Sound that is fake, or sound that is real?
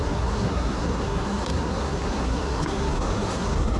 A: fake